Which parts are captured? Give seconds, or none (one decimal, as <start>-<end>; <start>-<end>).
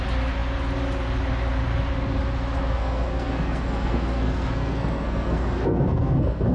0.0-2.7